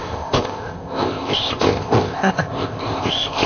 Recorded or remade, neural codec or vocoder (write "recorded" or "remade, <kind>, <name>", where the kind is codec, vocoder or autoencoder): remade, codec, ZipCodec